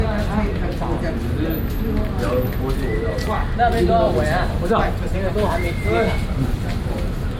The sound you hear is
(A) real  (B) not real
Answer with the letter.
A